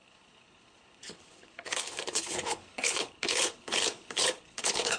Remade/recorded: remade